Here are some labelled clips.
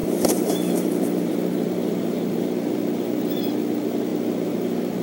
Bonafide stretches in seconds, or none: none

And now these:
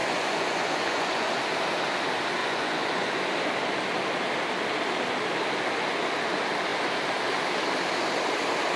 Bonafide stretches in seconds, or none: 1.3-2.4; 3.1-8.8

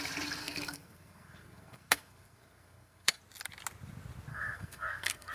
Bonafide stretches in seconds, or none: 0.0-0.4; 3.2-4.3

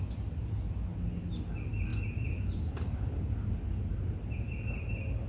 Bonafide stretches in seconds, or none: 0.0-5.3

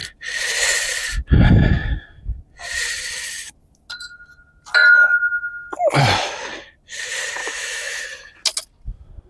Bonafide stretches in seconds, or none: 0.0-7.4; 8.0-9.3